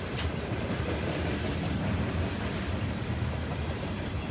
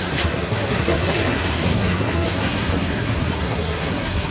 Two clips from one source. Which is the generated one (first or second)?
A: second